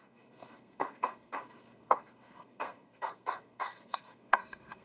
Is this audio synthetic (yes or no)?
yes